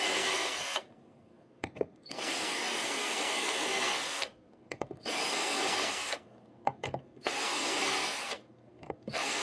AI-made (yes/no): yes